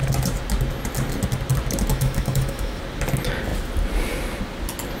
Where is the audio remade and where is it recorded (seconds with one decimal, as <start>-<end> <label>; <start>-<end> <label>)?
0.0-1.9 recorded; 1.9-2.8 remade; 2.8-5.0 recorded